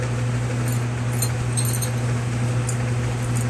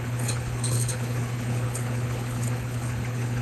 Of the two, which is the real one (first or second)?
first